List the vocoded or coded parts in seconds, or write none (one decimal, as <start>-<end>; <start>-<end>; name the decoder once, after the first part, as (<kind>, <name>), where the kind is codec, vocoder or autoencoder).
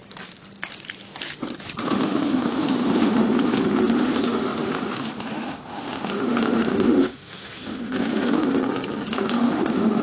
1.8-8.6 (autoencoder, DAC-VAE); 9.1-10.0